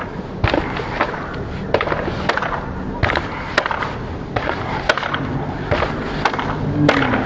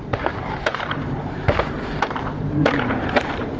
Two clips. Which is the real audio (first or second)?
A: first